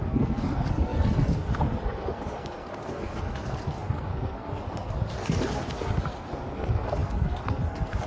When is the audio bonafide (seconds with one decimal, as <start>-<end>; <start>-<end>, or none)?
none